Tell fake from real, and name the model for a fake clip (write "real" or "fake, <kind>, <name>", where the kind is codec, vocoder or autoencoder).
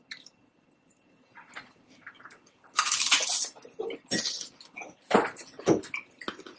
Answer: real